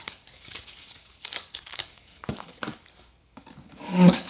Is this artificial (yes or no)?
yes